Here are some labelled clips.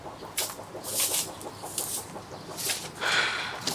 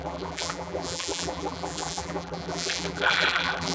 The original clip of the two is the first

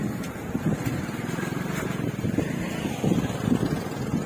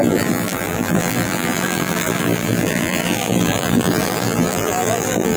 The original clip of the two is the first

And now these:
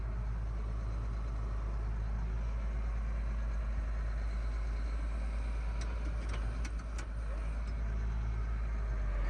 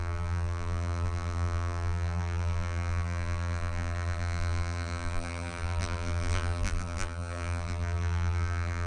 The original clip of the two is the first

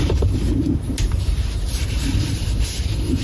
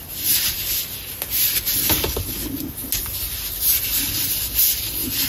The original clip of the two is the second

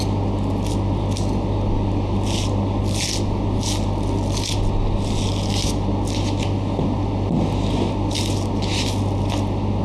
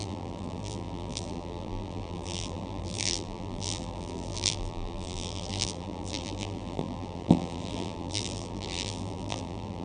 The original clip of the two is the first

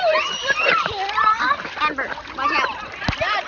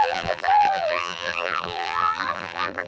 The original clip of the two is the first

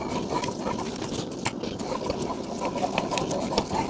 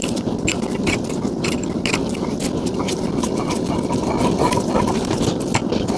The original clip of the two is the first